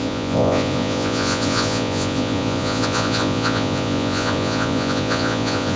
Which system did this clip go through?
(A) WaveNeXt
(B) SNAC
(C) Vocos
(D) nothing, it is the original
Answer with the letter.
C